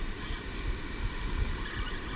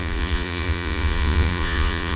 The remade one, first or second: second